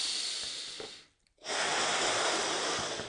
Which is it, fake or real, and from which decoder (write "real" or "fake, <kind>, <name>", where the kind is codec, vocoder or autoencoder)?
real